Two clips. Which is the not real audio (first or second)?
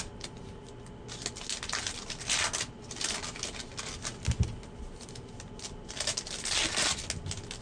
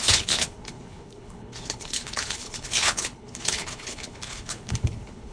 second